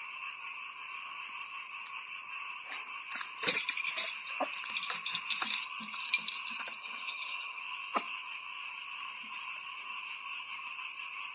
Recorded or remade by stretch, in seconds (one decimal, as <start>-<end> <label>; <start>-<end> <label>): 0.0-6.8 recorded; 6.8-7.6 remade; 7.6-11.3 recorded